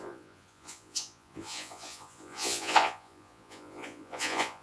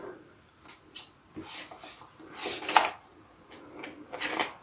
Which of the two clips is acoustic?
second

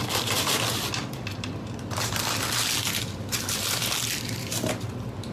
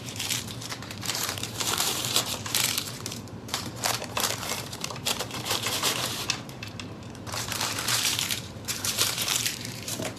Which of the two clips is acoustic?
first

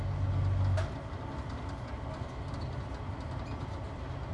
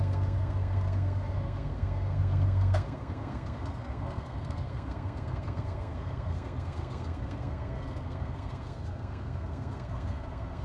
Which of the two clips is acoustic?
first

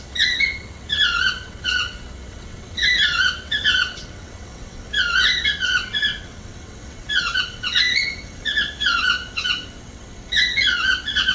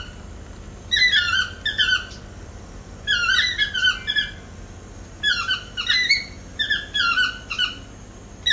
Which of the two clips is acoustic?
second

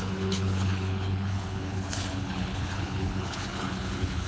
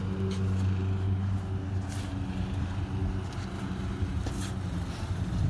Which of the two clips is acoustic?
second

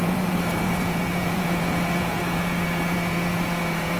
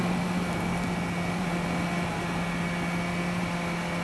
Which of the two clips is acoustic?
second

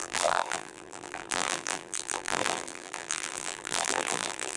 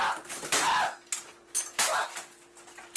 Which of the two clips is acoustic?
second